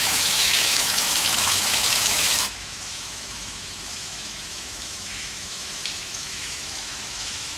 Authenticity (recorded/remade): remade